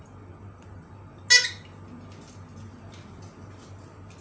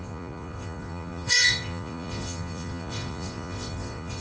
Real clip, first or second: first